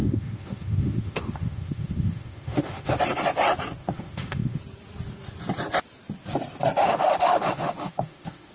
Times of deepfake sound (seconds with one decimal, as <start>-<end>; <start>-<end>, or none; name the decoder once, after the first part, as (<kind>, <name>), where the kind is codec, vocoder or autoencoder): 0.0-3.0 (autoencoder, DAC-VAE); 3.8-4.6; 6.8-8.5